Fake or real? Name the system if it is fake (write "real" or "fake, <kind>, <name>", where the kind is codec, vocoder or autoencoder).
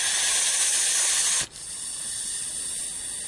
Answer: real